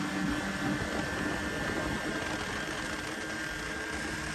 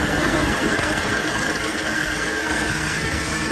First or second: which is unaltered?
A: first